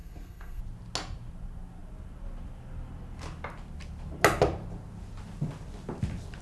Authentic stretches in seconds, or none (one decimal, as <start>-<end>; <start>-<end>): 0.6-6.4